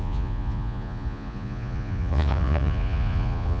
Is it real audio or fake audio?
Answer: fake